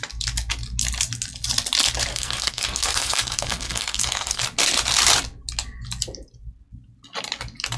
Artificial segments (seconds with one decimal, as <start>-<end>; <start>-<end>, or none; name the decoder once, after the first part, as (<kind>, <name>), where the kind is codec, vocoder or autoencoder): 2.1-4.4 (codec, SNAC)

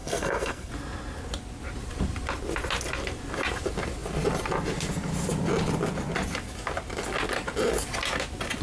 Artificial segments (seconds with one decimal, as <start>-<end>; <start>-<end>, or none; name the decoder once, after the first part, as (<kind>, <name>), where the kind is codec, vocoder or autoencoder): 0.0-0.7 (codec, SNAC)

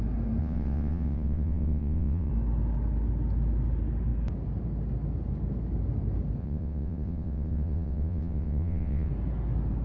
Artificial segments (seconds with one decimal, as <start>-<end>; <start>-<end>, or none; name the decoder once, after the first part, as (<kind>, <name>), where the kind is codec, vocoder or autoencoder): 0.4-2.3 (vocoder, WaveNeXt); 6.4-9.1

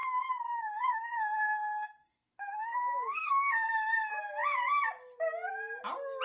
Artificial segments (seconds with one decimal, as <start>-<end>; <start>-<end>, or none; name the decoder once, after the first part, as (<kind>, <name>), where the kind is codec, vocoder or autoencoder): 0.0-3.7 (codec, SNAC)

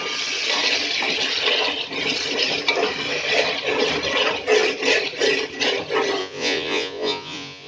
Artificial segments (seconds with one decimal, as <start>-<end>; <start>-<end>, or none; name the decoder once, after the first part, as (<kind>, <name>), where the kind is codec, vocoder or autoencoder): 6.2-7.7 (vocoder, Vocos)

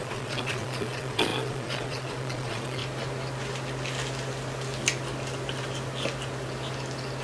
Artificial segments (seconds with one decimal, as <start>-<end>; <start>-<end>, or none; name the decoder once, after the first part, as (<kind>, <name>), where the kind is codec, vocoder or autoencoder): 0.0-2.8 (vocoder, Vocos)

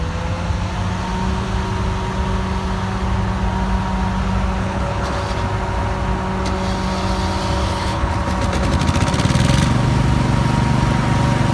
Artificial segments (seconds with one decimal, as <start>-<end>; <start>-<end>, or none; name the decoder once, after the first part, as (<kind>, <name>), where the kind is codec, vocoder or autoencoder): 4.6-5.2 (codec, HILCodec); 7.6-8.1

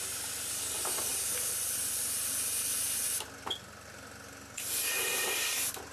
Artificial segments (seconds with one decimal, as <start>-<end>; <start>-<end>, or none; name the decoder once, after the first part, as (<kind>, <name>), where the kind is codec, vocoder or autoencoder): none